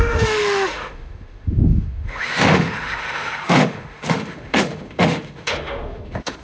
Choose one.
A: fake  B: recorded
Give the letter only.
A